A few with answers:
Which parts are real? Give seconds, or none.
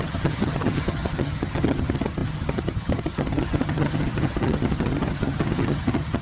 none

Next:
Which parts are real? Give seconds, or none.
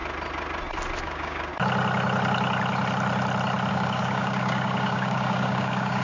0.0-1.0; 1.5-3.7